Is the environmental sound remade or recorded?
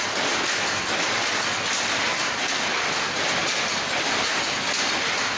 recorded